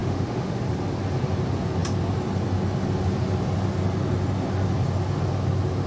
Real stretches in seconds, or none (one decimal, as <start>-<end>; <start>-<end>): 0.6-5.9